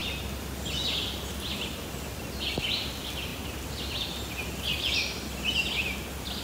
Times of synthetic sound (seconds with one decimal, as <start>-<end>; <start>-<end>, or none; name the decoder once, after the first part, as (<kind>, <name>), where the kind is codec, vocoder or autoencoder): 3.3-4.3 (vocoder, BigVGAN v2)